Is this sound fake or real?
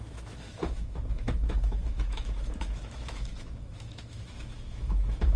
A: fake